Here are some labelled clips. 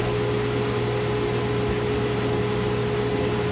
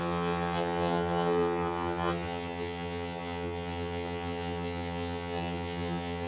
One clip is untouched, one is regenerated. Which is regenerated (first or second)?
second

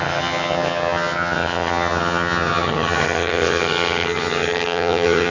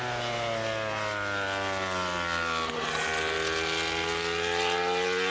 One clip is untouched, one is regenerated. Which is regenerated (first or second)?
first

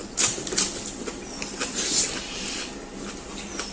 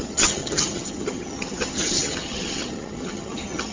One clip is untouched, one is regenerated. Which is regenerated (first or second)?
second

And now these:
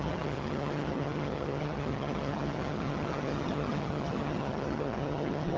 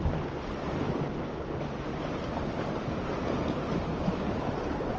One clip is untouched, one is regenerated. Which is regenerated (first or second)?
first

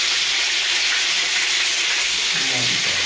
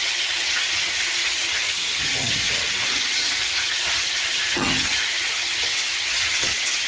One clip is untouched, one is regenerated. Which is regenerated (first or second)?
second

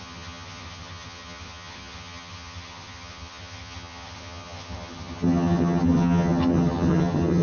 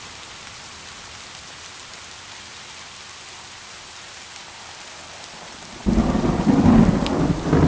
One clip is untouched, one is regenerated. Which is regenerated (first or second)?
first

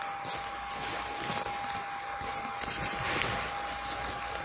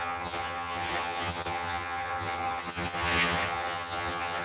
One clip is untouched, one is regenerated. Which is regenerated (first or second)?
second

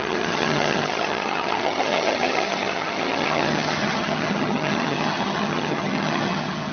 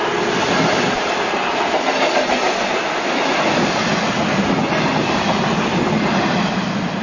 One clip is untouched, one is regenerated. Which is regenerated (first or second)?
first